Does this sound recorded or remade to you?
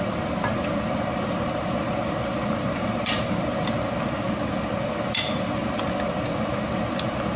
recorded